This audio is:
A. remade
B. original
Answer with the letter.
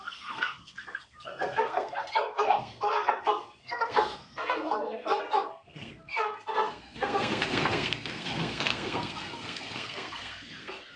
A